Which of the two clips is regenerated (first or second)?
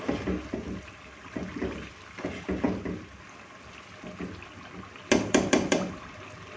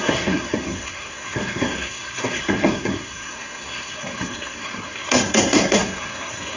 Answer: second